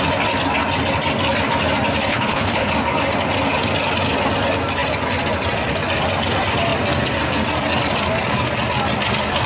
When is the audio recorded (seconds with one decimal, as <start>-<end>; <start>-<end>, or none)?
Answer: 0.0-2.1; 2.7-9.5